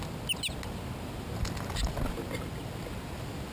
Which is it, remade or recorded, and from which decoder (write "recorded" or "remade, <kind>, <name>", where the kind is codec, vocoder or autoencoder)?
recorded